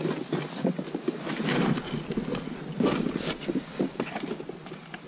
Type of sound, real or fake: real